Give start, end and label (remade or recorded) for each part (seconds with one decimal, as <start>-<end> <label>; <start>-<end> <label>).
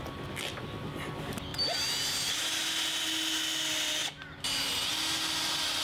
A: 0.0-5.8 recorded